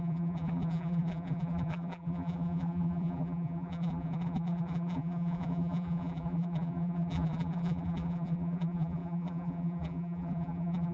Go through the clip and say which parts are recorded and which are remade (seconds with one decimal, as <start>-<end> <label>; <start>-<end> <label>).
0.0-10.9 remade